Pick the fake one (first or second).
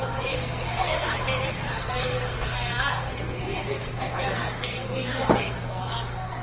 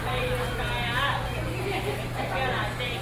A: first